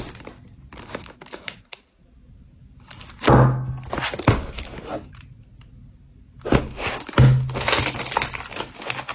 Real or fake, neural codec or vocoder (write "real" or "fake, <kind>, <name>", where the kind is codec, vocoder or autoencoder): real